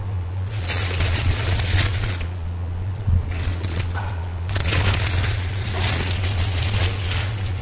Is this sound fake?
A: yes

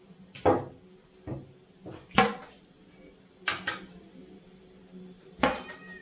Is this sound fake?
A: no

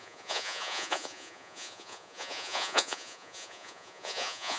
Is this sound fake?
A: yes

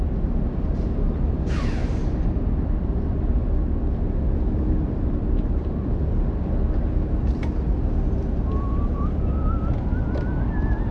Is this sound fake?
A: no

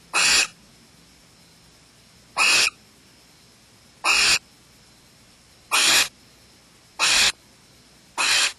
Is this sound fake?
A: no